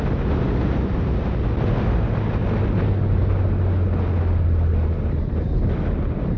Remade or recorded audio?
recorded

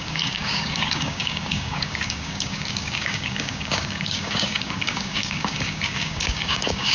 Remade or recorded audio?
remade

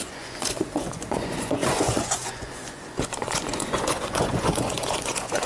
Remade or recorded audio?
remade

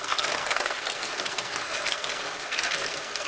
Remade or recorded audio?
remade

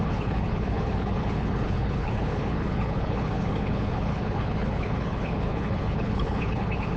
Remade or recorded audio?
remade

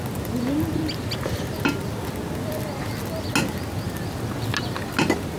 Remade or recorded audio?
recorded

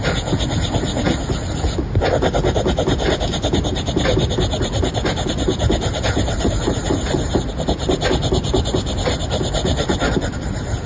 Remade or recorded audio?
recorded